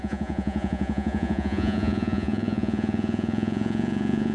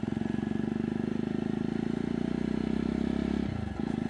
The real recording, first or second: second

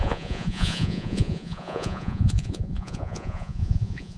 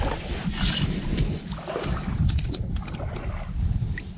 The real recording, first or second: second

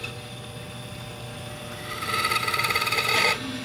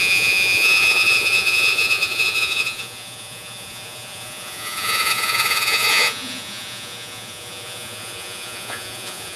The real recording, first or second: first